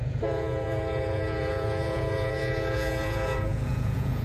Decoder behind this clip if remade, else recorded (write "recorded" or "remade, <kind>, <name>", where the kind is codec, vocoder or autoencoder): remade, vocoder, Vocos